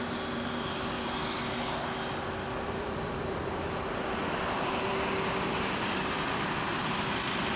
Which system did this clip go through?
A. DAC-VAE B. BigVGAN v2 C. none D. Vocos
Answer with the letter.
C